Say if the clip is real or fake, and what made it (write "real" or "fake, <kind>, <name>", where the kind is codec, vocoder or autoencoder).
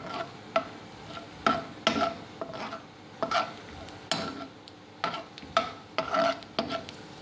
real